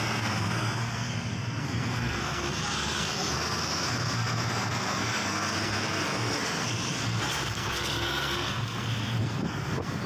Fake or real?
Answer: fake